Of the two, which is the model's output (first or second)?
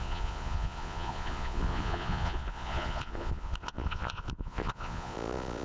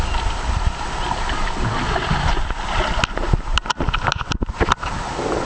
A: first